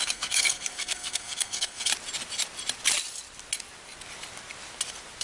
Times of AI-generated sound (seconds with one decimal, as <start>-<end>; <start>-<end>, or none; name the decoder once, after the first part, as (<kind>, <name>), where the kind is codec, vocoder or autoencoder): 0.0-1.9 (codec, SNAC)